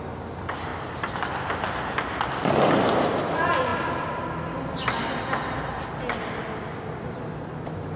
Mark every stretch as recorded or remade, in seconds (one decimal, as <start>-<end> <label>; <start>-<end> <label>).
0.0-8.0 recorded